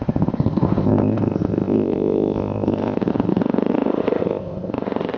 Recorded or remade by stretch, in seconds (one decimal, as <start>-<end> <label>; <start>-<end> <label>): 0.0-5.2 remade